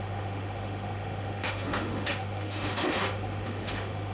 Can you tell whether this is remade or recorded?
remade